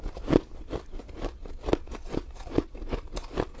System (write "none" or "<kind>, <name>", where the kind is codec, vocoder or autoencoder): none